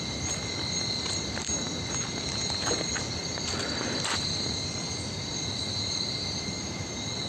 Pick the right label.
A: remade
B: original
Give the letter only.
B